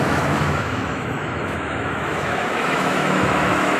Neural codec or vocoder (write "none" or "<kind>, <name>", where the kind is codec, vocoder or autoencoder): autoencoder, DAC-VAE